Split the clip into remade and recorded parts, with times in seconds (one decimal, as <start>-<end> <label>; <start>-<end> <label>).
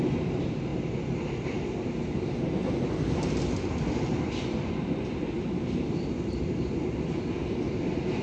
0.0-8.2 recorded